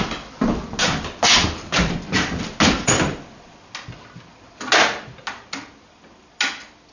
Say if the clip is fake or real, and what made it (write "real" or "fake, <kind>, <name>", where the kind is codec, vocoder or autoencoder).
real